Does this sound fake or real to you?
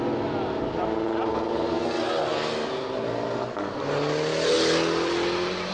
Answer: real